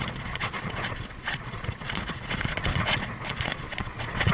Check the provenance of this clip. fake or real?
fake